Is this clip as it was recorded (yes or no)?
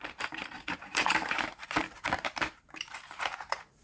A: no